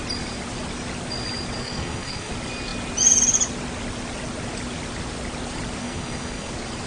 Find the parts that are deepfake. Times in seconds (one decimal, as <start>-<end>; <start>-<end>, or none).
1.6-2.3; 5.8-6.5